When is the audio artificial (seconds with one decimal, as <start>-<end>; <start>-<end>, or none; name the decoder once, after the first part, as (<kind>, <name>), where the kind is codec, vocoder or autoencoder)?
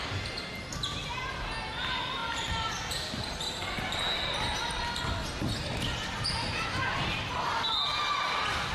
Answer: none